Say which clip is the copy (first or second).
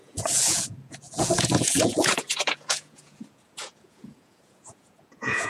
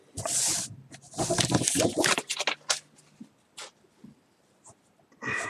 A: first